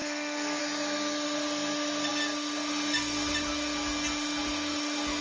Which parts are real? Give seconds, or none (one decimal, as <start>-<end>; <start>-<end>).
0.6-5.2